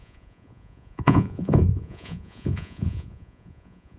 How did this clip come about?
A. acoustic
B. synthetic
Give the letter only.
B